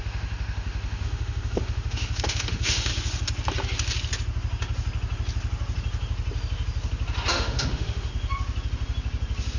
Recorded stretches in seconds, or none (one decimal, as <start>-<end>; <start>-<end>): 2.9-7.3; 8.1-9.6

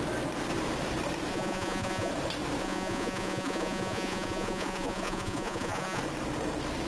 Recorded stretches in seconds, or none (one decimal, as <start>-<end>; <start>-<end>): 0.0-1.3; 2.1-2.6; 6.0-6.9